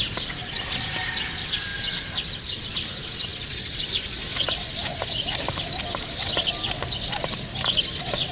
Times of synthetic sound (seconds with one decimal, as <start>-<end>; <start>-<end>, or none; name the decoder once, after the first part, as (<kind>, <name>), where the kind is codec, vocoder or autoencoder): none